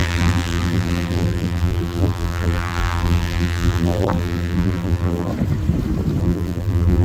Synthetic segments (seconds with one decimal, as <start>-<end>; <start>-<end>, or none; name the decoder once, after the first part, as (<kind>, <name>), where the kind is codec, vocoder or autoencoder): 0.0-5.3 (vocoder, BigVGAN v2); 6.2-7.0